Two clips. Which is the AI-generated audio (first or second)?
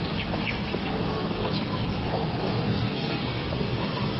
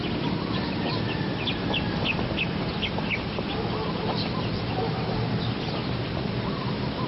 first